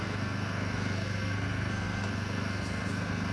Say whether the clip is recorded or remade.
remade